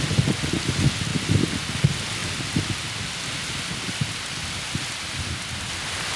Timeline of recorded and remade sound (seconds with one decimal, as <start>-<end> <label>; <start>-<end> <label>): 0.0-6.2 recorded